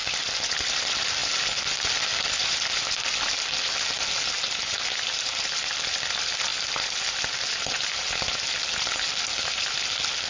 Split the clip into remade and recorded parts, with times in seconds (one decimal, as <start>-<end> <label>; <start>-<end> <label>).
0.0-0.7 remade; 0.7-10.3 recorded